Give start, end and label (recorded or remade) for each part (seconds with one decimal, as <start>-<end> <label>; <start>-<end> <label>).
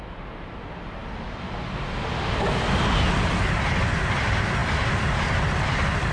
0.0-6.1 recorded